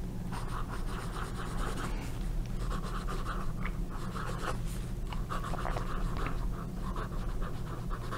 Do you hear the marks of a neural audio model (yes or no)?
no